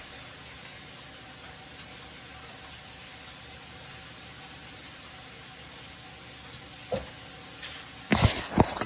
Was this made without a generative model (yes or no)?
yes